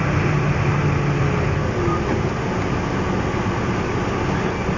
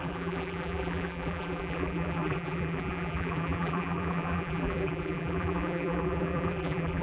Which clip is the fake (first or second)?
second